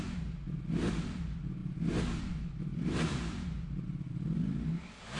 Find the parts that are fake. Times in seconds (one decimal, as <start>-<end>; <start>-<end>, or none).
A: none